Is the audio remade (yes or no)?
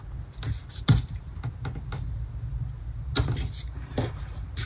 no